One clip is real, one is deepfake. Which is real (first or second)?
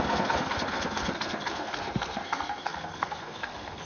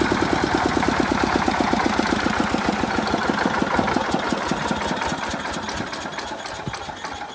second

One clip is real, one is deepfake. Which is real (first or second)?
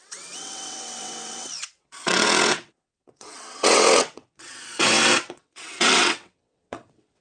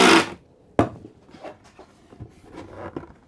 second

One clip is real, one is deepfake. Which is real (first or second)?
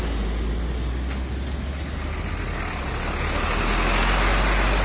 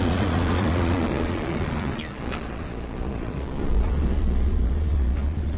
first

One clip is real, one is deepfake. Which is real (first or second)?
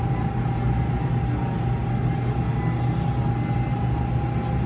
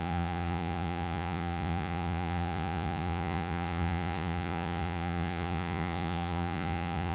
first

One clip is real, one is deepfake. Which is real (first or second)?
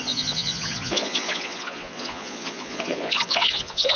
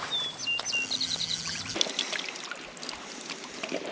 second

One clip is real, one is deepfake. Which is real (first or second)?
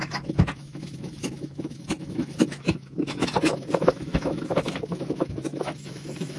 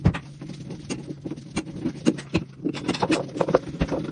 second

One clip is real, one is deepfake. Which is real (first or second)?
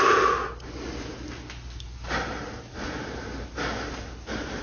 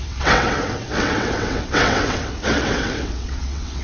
first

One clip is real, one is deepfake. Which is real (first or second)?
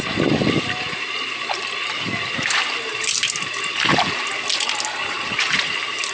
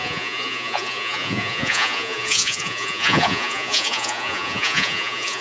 first